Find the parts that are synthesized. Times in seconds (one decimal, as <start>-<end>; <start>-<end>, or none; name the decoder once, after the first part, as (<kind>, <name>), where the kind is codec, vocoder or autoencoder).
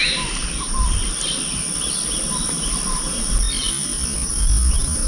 none